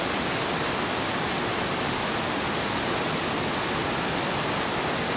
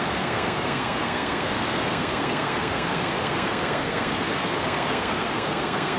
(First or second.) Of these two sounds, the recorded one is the first